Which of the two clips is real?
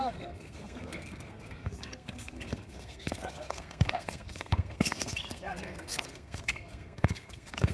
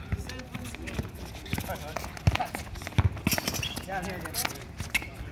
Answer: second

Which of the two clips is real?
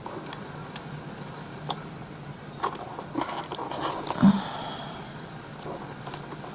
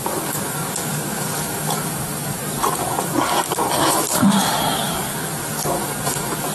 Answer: first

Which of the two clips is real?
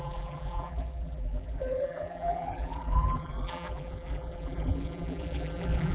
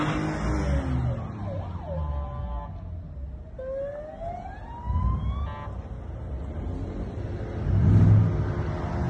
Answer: second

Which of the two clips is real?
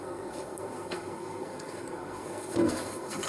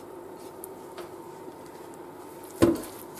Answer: second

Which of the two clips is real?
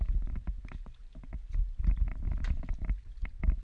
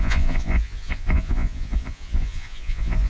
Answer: first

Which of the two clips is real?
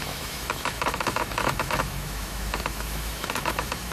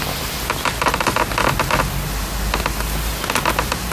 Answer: second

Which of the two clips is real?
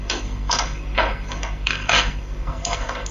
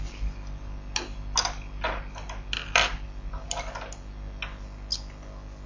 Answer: second